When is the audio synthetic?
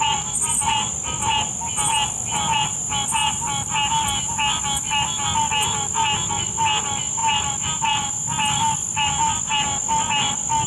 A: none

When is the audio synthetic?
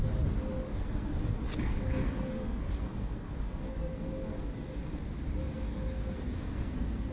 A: 0.7-5.0 (codec, SNAC); 5.4-7.1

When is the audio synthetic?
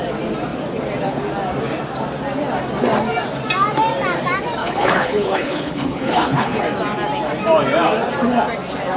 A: 4.6-6.6 (codec, HILCodec)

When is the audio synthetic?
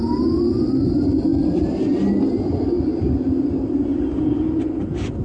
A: none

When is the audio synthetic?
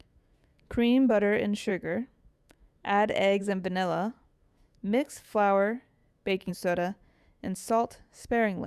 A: 0.0-8.7 (autoencoder, DAC-VAE)